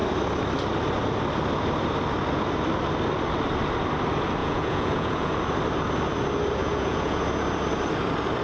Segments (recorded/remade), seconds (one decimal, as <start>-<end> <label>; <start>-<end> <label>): 0.0-4.4 recorded; 4.4-5.3 remade; 5.3-6.6 recorded; 6.6-7.2 remade; 7.2-8.4 recorded